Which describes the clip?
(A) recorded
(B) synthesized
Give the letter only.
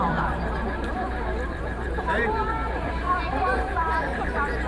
B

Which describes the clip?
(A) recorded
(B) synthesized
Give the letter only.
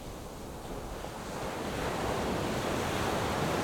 A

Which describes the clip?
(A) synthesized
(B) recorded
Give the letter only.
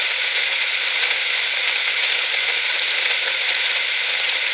A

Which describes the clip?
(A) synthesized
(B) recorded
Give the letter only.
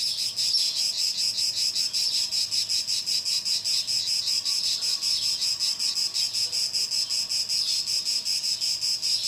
B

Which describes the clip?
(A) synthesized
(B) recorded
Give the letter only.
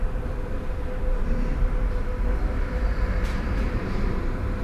A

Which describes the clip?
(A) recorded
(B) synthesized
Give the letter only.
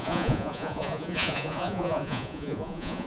B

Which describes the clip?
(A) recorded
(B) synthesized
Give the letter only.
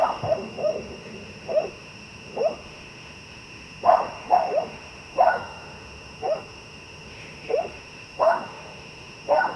B